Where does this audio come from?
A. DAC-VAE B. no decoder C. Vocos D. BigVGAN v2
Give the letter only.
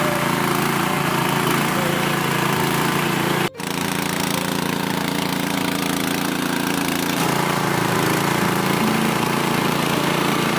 D